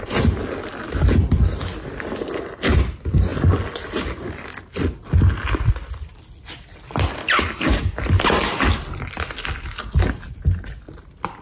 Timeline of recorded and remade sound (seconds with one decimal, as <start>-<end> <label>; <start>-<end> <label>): 0.0-11.4 recorded